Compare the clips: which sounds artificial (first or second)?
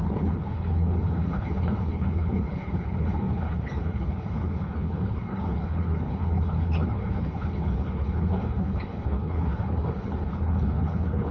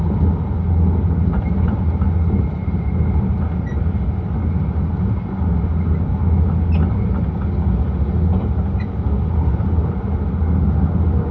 first